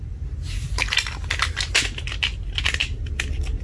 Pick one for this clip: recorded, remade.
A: recorded